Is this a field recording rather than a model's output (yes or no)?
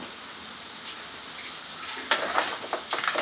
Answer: yes